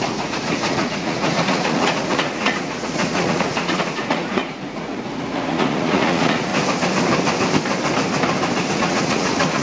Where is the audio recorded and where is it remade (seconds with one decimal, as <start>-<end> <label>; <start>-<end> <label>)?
0.0-6.5 remade; 6.5-8.7 recorded; 8.7-9.6 remade